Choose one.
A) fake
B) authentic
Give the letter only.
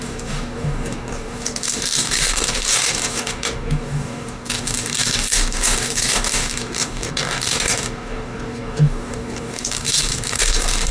A